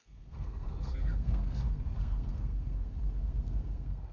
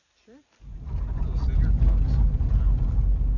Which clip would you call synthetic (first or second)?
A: first